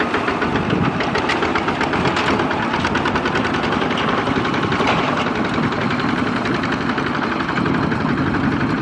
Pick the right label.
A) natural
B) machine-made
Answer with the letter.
A